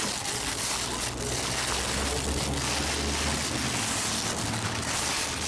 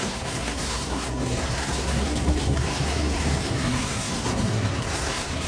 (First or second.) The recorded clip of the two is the first